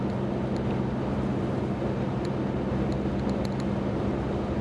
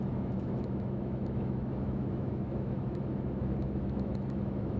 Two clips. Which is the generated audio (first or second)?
second